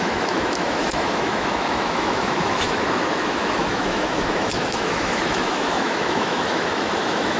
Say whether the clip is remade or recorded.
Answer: remade